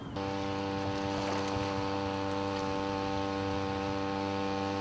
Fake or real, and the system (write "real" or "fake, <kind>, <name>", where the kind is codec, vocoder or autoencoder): real